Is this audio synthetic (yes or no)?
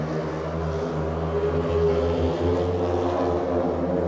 no